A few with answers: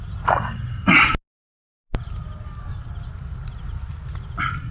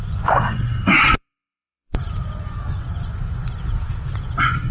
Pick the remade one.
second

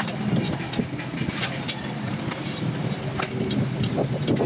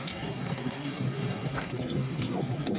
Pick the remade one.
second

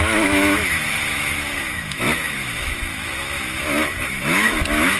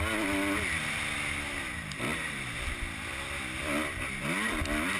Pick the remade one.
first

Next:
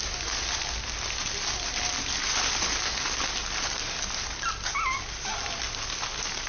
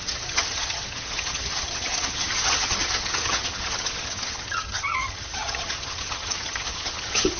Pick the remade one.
second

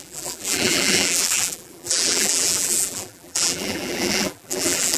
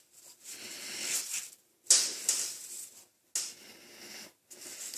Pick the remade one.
first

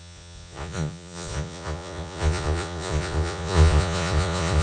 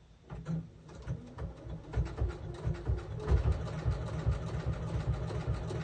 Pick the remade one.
first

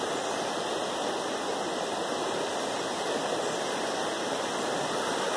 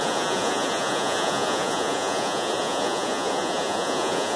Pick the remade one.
second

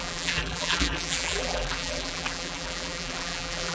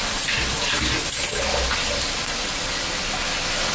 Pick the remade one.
first